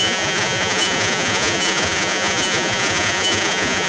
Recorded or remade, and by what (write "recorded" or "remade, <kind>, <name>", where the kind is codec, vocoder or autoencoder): remade, vocoder, Vocos